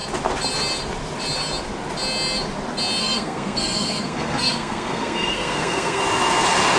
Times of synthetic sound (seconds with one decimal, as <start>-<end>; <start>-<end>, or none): 3.0-6.0